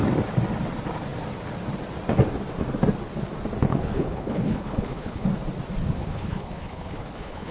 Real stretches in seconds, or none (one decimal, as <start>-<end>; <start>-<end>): 0.0-3.7; 5.3-6.0